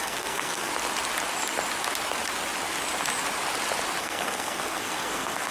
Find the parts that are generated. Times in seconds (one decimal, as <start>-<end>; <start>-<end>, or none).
0.0-0.7; 4.0-5.5